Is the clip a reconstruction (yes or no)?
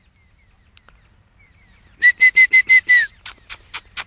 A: no